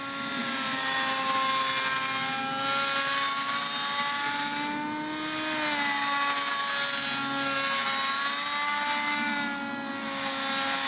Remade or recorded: recorded